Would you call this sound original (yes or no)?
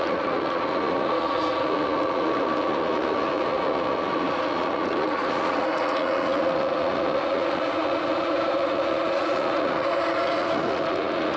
no